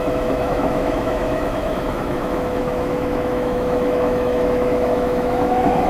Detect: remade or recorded remade